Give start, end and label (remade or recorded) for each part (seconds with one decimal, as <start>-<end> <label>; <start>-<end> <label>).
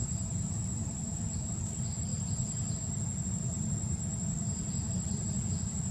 0.0-0.5 remade; 0.5-1.0 recorded; 1.0-1.6 remade; 1.6-5.9 recorded